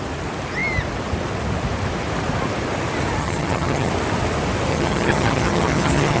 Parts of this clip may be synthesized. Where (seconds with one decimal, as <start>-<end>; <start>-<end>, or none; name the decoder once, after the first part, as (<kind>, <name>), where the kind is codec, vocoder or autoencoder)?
3.2-3.9 (vocoder, HiFi-GAN); 4.7-6.2